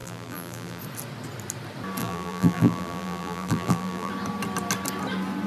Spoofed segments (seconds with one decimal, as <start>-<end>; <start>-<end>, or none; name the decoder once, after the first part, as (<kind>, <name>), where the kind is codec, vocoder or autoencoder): 0.0-0.8 (vocoder, BigVGAN v2); 2.0-4.1